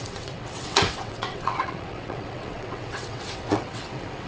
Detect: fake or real fake